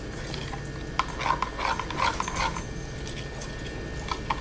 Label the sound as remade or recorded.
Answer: recorded